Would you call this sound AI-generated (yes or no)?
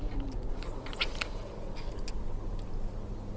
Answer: no